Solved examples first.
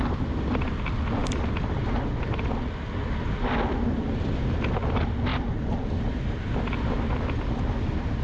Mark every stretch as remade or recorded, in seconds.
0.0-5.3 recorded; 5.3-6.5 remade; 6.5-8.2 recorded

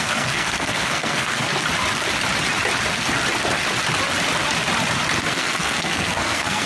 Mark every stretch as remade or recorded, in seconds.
0.0-1.5 remade; 1.5-5.2 recorded; 5.2-6.7 remade

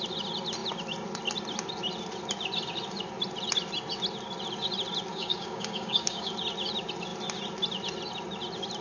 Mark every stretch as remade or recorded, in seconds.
0.0-5.1 recorded; 5.1-6.3 remade; 6.3-8.8 recorded

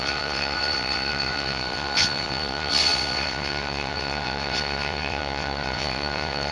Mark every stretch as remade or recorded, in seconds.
0.0-6.5 remade

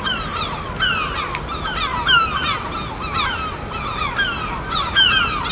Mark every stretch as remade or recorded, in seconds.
0.0-5.5 recorded